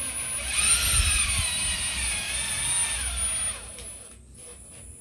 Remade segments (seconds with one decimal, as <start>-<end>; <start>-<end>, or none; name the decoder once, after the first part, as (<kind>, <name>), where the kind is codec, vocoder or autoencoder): none